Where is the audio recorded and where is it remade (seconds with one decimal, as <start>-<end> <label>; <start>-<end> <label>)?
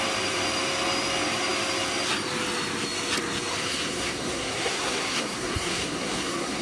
0.0-3.5 recorded; 3.5-6.6 remade